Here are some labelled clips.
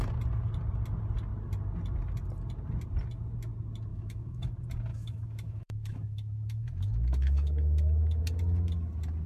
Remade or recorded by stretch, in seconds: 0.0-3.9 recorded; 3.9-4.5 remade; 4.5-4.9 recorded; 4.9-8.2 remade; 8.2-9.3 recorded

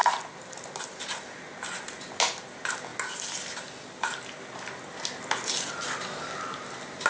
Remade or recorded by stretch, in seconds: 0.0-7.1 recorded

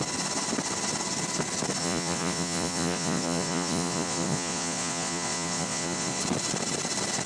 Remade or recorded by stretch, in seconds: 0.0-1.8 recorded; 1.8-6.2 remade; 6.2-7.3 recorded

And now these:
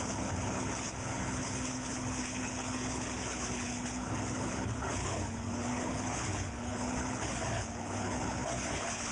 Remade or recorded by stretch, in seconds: 0.0-9.1 remade

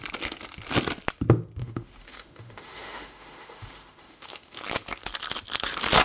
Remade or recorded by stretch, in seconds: 0.0-1.6 recorded; 1.6-4.6 remade; 4.6-6.0 recorded

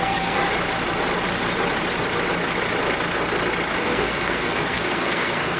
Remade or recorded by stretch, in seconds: 0.0-0.4 remade; 0.4-3.8 recorded; 3.8-5.6 remade